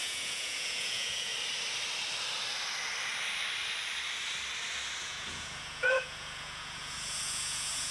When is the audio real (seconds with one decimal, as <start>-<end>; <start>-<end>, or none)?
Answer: 1.3-5.0